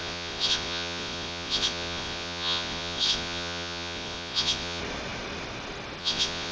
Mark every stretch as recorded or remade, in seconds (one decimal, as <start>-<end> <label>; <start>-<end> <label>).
0.0-4.8 remade; 4.8-6.0 recorded; 6.0-6.5 remade